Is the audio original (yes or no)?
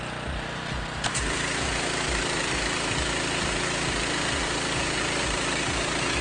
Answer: no